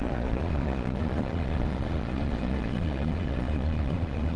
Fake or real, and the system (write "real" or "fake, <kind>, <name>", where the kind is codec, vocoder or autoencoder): fake, vocoder, Vocos